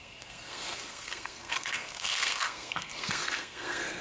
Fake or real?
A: fake